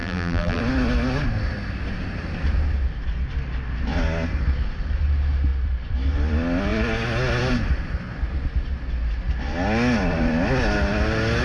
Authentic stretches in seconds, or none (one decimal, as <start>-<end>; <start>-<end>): 0.6-11.4